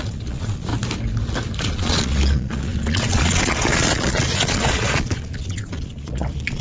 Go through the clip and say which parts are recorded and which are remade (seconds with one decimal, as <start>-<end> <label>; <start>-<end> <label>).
0.0-0.7 remade; 0.7-1.6 recorded; 1.6-6.6 remade